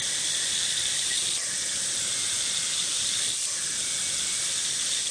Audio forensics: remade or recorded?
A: recorded